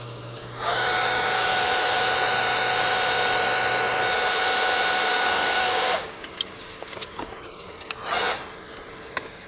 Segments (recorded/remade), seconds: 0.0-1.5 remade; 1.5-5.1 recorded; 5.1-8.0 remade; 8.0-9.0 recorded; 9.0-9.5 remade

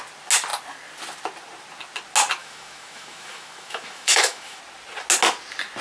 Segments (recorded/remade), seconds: 0.0-2.4 recorded; 2.4-4.6 remade; 4.6-5.8 recorded

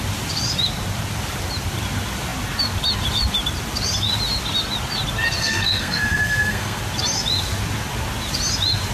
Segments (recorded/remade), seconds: 0.0-5.4 recorded; 5.4-6.8 remade; 6.8-8.9 recorded

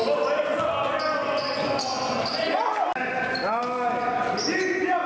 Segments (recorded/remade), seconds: 0.0-5.1 recorded

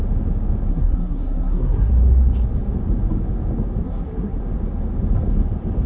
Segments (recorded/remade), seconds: 0.0-0.7 recorded; 0.7-1.9 remade; 1.9-3.8 recorded; 3.8-4.4 remade; 4.4-5.9 recorded

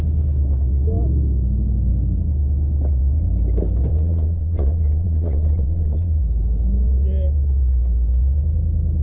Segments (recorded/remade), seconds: 0.0-3.9 recorded; 3.9-6.2 remade; 6.2-9.0 recorded

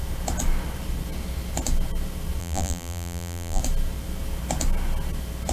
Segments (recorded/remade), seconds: 0.0-2.4 recorded; 2.4-3.6 remade; 3.6-5.5 recorded

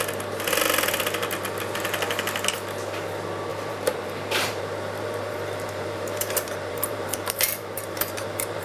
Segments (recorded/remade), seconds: 0.0-3.5 recorded; 3.5-8.6 remade